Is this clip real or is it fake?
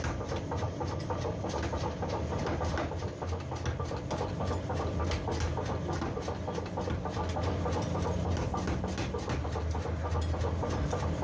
real